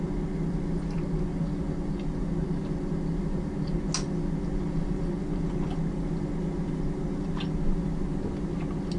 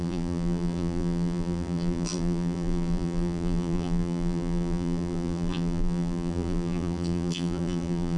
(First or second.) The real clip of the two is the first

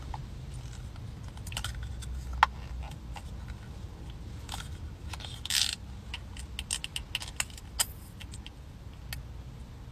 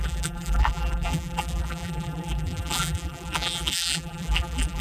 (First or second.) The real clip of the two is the first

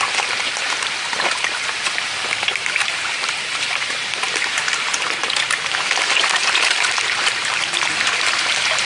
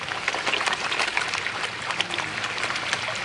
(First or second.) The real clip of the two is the second